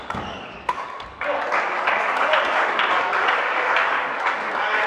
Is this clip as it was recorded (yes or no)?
no